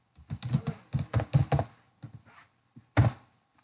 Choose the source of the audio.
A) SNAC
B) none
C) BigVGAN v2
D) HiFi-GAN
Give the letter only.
B